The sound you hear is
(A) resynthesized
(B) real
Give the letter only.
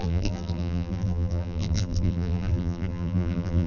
A